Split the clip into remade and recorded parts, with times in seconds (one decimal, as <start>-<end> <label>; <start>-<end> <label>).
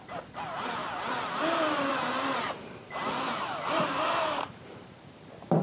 0.0-0.8 remade; 0.8-1.3 recorded; 1.3-5.6 remade